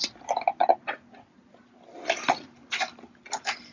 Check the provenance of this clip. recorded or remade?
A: recorded